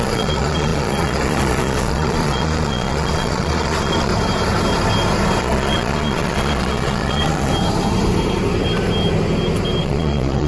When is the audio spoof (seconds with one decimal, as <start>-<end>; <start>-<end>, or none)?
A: 0.0-4.1; 5.4-7.5; 9.8-10.5